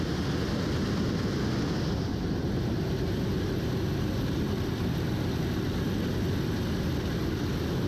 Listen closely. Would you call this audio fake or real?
real